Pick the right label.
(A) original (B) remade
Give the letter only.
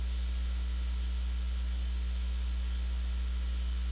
A